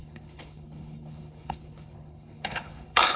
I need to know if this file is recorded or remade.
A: remade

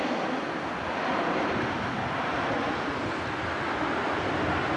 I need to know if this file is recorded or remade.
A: recorded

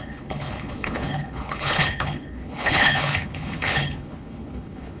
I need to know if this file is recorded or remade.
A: remade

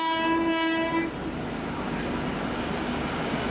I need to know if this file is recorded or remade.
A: recorded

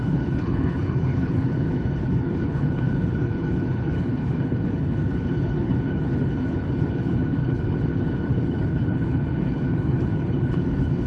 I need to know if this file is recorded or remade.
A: remade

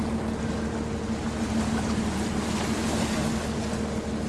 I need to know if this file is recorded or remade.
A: recorded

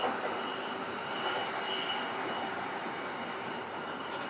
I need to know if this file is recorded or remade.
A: recorded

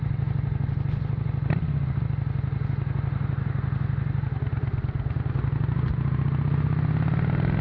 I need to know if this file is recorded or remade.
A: recorded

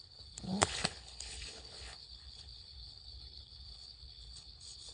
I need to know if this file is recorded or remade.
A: remade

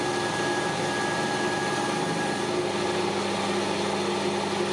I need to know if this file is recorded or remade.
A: recorded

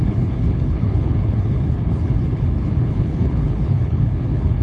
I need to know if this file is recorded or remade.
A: remade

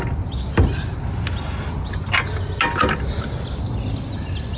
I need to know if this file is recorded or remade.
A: recorded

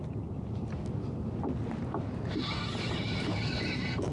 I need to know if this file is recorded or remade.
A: recorded